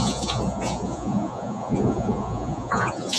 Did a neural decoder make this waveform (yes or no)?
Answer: yes